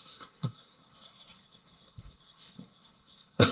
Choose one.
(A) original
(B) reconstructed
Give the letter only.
B